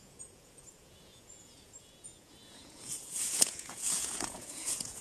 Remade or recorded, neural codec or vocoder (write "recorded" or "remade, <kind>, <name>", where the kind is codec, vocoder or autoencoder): remade, vocoder, Vocos